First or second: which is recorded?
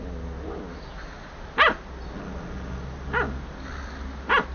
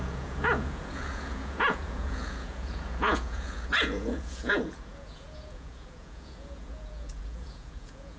first